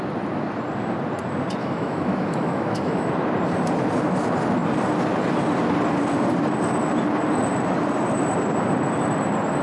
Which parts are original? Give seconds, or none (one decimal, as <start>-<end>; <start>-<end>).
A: 0.0-1.6; 3.1-9.6